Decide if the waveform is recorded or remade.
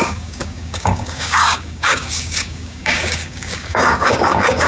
remade